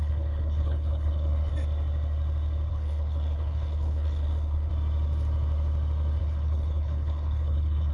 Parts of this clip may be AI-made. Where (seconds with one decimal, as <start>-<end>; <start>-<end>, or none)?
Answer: 0.0-1.5; 2.7-4.7; 6.2-7.9